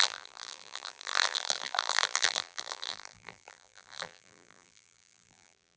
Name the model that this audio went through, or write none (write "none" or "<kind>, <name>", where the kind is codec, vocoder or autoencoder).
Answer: vocoder, BigVGAN v2